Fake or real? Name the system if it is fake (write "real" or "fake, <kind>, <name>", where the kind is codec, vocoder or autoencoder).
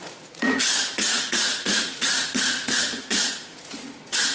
fake, vocoder, Vocos